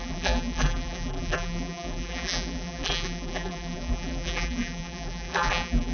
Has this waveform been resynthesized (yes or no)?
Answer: yes